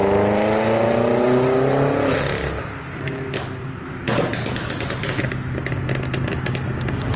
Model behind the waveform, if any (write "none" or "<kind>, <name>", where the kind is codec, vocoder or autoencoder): none